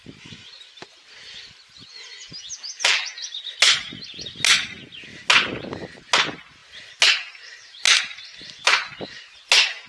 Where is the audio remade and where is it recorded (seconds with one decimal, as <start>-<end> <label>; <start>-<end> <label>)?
0.0-2.1 recorded; 2.1-3.4 remade; 3.4-9.9 recorded